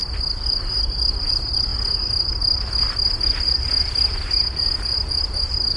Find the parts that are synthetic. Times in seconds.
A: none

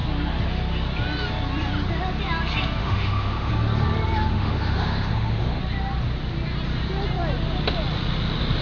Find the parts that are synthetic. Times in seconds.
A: 2.8-3.5 (autoencoder, DAC-VAE); 4.3-5.6

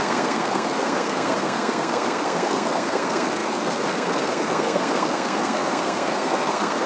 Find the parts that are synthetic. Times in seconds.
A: 0.0-6.9 (codec, SNAC)